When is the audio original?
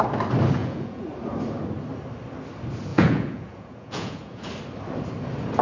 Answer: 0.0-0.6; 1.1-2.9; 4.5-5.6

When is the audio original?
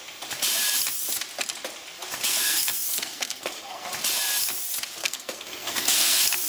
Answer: 0.0-2.1; 3.9-5.0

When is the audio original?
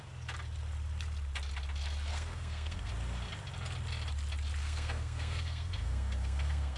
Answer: 0.0-2.1; 2.9-4.6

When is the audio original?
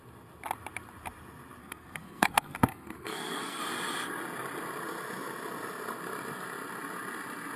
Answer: 0.0-1.6; 3.6-7.6